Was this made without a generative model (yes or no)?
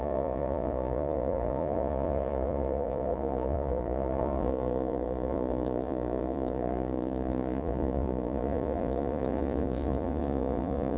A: no